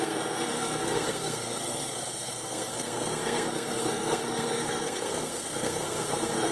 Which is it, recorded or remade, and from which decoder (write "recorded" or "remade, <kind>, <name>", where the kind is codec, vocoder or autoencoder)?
remade, codec, SNAC